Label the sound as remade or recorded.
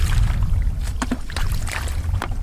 remade